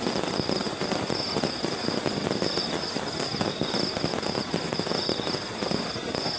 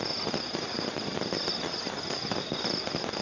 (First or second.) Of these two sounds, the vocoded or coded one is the second